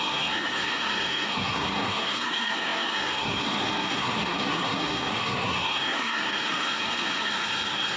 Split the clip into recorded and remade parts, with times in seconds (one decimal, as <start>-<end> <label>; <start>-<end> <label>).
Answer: 0.0-8.0 remade